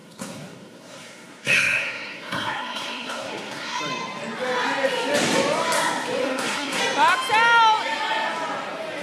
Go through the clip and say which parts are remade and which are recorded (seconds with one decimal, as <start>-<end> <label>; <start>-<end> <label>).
0.0-3.8 remade; 3.8-6.2 recorded; 6.2-6.8 remade; 6.8-9.0 recorded